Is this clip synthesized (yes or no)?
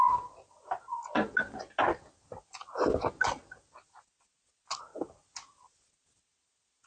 no